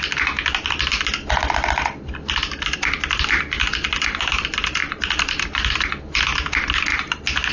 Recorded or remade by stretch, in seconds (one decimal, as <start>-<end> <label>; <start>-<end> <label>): 0.0-4.8 recorded; 4.8-5.4 remade; 5.4-7.5 recorded